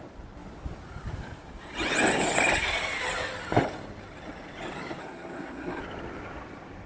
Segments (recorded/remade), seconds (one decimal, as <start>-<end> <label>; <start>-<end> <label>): 0.0-5.0 recorded; 5.0-5.8 remade; 5.8-6.9 recorded